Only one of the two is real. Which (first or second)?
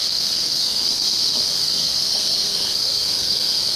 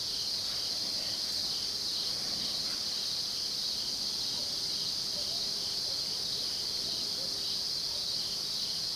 second